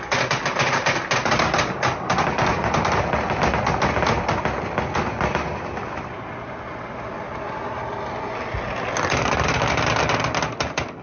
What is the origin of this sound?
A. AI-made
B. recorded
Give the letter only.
B